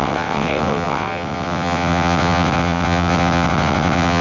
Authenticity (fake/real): fake